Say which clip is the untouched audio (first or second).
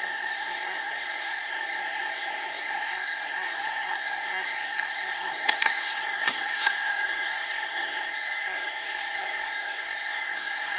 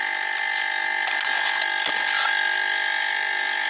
second